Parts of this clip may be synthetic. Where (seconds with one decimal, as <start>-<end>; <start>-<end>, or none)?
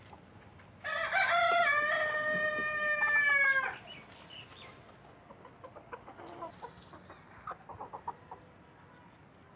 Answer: none